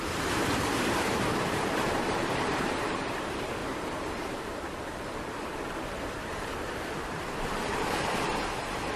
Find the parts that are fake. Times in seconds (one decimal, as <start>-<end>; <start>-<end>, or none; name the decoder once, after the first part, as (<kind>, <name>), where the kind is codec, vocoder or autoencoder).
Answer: 0.0-9.0 (vocoder, BigVGAN v2)